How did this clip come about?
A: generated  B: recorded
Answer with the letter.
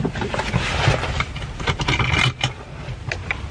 B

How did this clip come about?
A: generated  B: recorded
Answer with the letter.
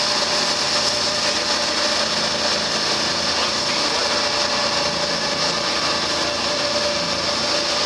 B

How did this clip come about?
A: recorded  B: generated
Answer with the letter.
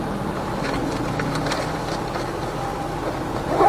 A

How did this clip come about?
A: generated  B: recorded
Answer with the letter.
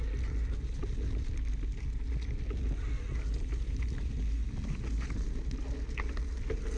B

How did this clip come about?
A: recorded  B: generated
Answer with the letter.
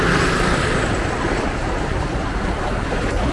A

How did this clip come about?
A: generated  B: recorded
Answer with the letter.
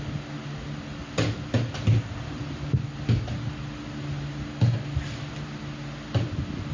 B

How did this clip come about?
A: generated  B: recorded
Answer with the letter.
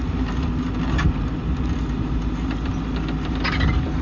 B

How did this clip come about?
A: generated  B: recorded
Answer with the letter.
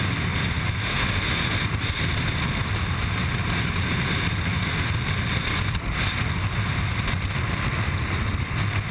B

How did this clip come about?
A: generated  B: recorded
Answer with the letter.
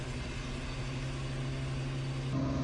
B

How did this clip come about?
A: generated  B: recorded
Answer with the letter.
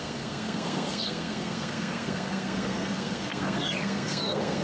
A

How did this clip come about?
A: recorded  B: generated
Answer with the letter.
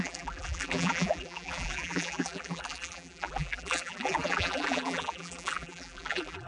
B